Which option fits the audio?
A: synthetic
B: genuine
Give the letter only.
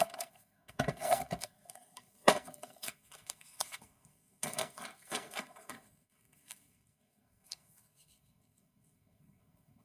A